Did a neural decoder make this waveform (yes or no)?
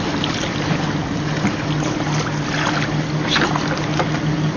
no